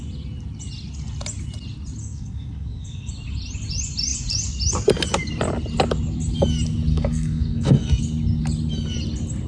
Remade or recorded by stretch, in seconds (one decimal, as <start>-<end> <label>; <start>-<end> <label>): 0.0-2.0 recorded; 2.0-3.1 remade; 3.1-6.9 recorded; 6.9-8.0 remade; 8.0-9.5 recorded